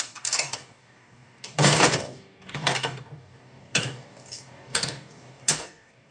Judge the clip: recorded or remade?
remade